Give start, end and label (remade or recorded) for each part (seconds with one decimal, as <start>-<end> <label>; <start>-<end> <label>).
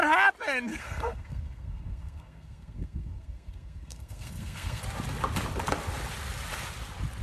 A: 0.0-0.7 recorded; 0.7-4.8 remade; 4.8-7.2 recorded